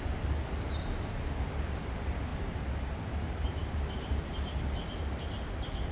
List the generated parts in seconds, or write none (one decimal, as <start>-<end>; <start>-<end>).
none